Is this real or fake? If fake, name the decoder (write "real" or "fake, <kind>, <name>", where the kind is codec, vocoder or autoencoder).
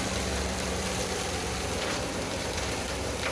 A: fake, vocoder, BigVGAN v2